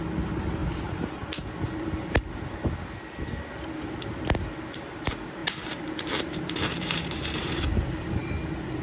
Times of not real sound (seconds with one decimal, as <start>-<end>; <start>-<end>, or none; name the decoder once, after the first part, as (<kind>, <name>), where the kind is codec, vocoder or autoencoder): 0.6-1.3 (vocoder, BigVGAN v2); 5.4-7.6